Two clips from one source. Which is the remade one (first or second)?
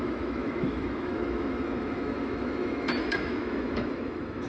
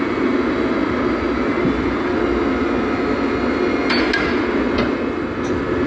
first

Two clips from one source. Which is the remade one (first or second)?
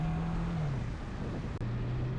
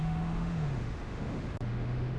second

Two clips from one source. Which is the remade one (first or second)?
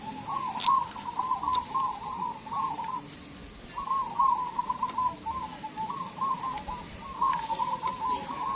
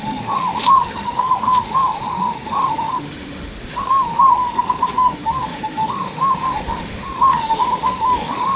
second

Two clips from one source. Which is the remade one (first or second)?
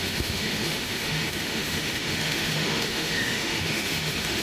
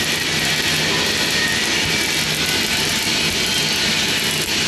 first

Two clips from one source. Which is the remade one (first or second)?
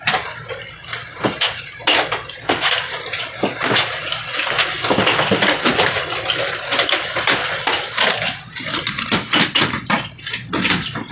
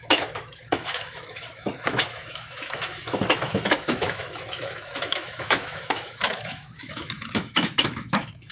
second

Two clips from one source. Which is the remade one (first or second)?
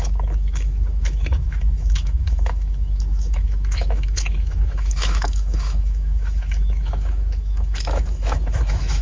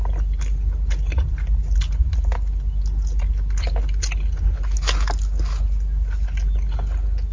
first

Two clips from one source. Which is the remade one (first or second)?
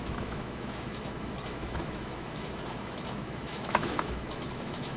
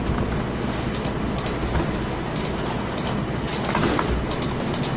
first